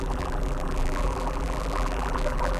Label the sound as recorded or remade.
remade